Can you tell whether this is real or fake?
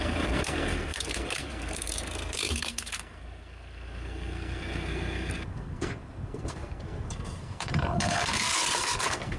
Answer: fake